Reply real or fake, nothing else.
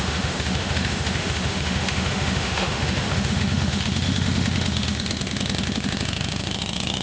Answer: fake